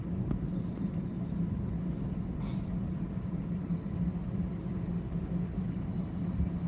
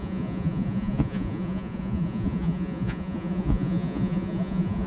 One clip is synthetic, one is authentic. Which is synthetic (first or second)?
second